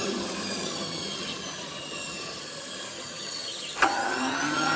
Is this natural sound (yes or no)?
no